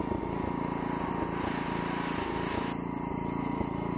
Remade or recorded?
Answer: recorded